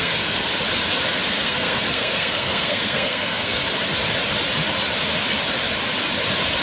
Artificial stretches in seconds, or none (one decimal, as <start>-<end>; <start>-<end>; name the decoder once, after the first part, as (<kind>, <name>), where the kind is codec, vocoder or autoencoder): 0.0-0.5 (codec, SNAC); 1.3-3.6